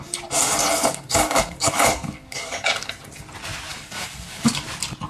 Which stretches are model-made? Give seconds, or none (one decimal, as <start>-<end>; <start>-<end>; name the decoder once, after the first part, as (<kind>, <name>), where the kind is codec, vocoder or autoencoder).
0.8-2.9 (codec, DAC); 3.7-4.6